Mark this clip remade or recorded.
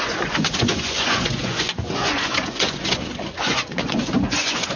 remade